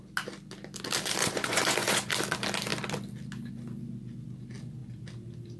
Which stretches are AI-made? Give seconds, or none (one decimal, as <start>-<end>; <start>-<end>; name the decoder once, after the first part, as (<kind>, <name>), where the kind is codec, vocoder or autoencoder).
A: 1.2-2.1 (vocoder, Vocos)